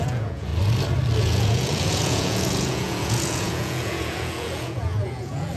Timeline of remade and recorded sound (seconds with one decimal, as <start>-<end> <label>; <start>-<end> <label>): 0.0-0.5 remade; 0.5-1.2 recorded; 1.2-5.6 remade